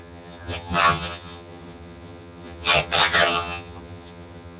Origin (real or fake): fake